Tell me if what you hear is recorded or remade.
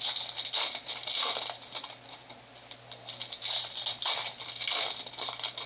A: recorded